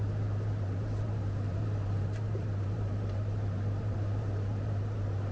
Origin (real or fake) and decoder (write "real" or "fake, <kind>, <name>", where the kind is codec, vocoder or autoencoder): fake, vocoder, BigVGAN v2